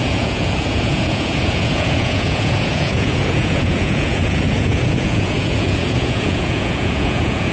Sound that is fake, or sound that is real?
fake